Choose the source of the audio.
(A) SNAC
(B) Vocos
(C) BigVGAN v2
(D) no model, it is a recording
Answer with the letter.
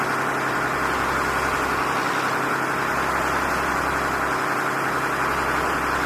D